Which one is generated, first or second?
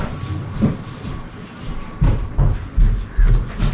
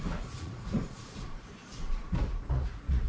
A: second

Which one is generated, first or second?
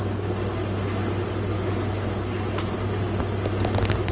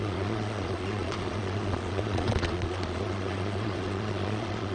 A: second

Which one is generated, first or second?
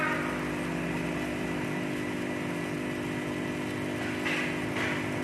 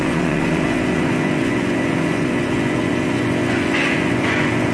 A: second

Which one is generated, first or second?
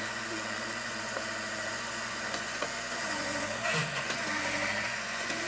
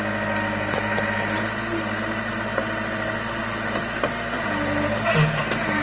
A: first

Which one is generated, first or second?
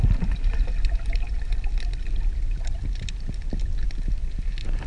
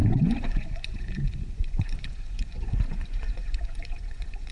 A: second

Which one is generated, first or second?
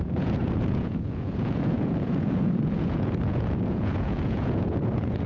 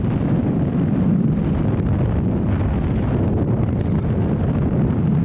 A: first